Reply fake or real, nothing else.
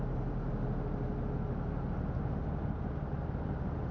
real